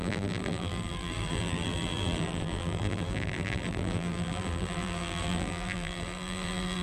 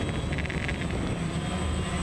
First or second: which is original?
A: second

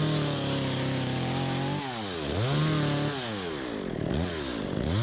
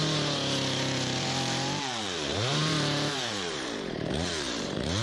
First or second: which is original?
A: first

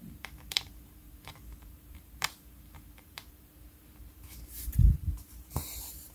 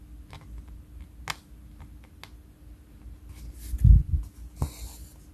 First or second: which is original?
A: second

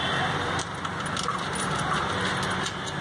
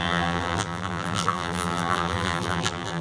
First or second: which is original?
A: first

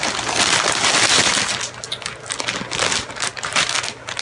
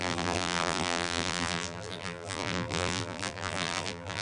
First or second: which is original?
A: first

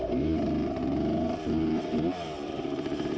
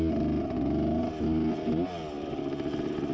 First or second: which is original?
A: second